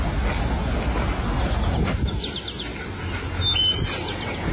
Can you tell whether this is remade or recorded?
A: recorded